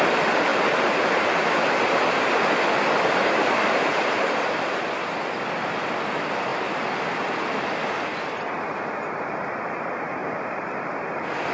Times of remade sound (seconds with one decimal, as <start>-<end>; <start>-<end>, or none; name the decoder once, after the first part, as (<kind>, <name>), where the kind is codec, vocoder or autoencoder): none